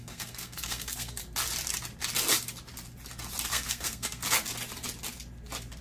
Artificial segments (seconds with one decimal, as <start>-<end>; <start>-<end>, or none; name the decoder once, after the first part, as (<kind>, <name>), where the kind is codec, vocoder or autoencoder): 0.0-1.2 (codec, SNAC); 3.5-4.2